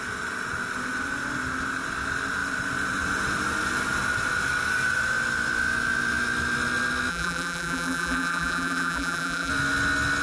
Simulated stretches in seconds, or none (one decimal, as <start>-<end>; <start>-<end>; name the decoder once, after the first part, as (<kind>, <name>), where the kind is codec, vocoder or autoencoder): 7.1-9.5 (vocoder, BigVGAN v2)